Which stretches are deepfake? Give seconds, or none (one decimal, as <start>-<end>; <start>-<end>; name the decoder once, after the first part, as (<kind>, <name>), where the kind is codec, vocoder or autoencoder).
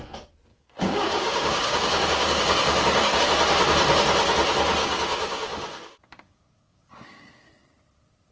0.5-3.2 (codec, DAC); 4.8-7.5